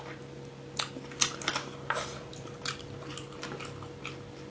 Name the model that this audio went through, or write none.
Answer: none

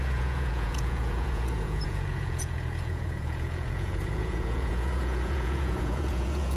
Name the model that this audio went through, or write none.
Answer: vocoder, Vocos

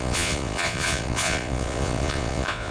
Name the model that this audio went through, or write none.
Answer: vocoder, Vocos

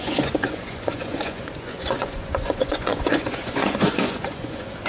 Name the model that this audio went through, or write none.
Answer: vocoder, Vocos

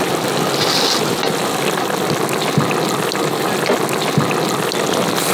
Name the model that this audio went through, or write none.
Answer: none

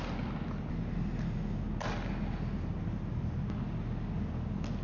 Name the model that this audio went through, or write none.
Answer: none